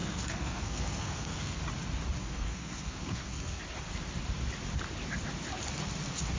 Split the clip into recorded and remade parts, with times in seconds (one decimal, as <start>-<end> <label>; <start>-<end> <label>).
0.0-1.6 remade; 1.6-2.2 recorded; 2.2-3.6 remade; 3.6-6.4 recorded